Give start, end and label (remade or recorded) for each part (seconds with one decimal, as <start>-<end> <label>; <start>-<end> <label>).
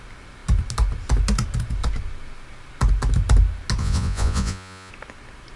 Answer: 0.0-3.8 recorded; 3.8-4.9 remade; 4.9-5.6 recorded